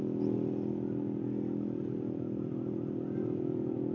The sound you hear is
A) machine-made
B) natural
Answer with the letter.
B